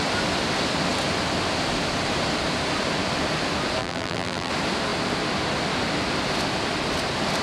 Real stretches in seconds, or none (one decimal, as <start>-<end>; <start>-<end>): 0.0-3.8; 4.5-7.4